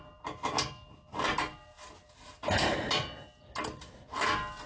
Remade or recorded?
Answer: recorded